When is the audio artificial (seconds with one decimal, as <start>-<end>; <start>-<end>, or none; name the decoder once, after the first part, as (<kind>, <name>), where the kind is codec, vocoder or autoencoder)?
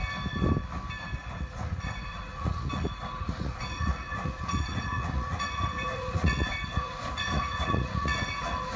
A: 1.3-8.8 (vocoder, Vocos)